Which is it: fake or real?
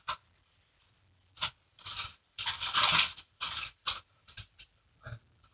real